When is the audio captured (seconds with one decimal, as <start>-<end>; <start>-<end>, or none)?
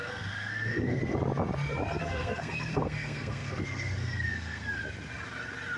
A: 1.0-2.0; 4.8-5.8